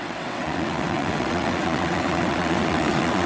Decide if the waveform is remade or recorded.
remade